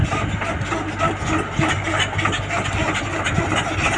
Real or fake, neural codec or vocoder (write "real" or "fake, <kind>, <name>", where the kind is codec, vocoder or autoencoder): real